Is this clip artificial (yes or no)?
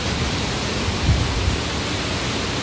no